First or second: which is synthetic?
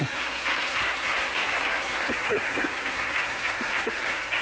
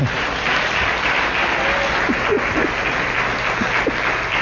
first